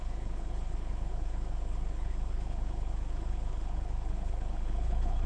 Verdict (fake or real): fake